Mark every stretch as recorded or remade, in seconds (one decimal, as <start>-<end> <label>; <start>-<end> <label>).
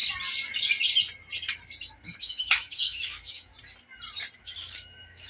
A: 0.0-2.2 recorded; 2.2-3.5 remade; 3.5-4.4 recorded; 4.4-5.3 remade